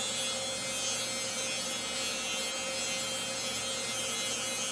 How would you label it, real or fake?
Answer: real